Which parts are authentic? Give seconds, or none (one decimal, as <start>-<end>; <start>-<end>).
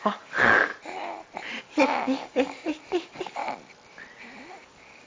0.7-1.6; 3.4-4.5